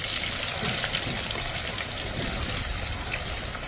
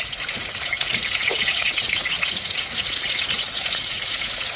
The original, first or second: first